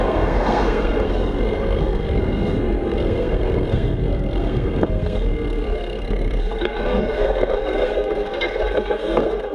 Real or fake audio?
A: fake